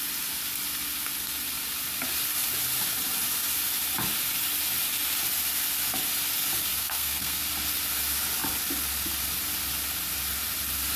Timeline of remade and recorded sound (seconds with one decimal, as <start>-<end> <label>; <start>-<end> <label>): 0.0-6.7 recorded; 6.7-7.4 remade; 7.4-11.0 recorded